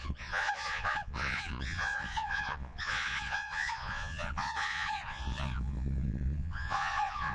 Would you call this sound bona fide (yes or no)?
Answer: no